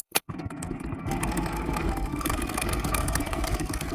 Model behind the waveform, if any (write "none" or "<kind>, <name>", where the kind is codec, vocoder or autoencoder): codec, SNAC